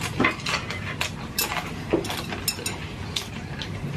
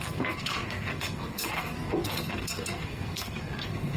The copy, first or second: second